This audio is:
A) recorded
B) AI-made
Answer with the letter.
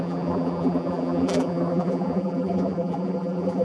B